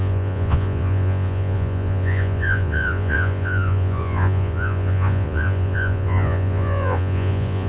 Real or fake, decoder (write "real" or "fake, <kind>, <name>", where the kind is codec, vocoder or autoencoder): fake, vocoder, Vocos